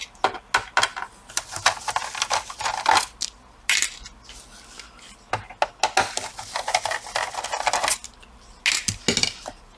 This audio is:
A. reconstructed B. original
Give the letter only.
B